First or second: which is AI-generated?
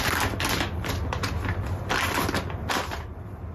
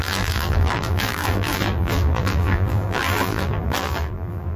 second